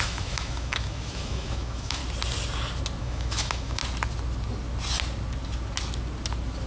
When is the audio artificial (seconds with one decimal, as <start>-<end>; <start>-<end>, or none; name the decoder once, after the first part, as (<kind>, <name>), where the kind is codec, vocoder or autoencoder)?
0.0-2.0 (autoencoder, DAC-VAE); 3.0-3.8